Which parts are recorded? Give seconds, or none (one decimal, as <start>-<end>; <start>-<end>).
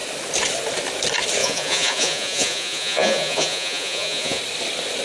0.0-1.4; 4.4-5.0